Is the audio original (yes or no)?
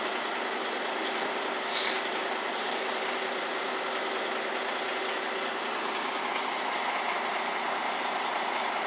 yes